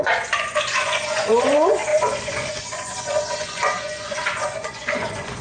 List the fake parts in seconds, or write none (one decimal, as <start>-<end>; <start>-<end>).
0.0-5.4